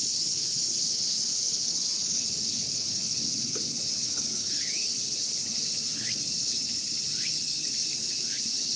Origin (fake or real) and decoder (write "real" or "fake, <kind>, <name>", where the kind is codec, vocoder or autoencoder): fake, codec, HILCodec